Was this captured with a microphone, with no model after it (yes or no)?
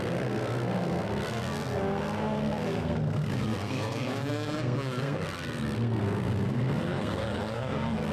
no